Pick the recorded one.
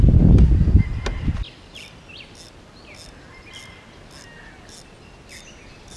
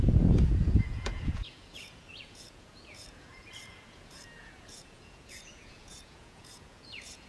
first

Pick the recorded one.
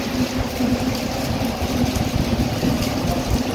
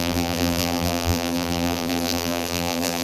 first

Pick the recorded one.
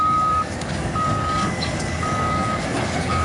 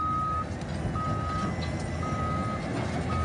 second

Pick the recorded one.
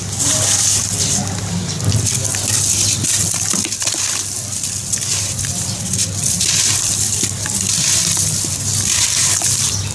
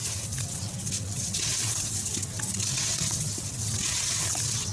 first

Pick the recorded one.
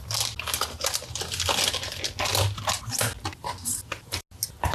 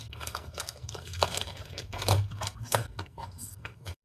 first